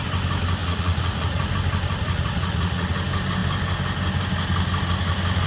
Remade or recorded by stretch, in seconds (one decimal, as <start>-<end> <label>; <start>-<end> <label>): 0.0-0.6 recorded; 0.6-1.5 remade; 1.5-2.0 recorded; 2.0-2.9 remade; 2.9-5.5 recorded